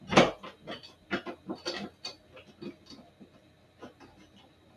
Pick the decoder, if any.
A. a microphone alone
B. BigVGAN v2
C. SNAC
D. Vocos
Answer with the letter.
A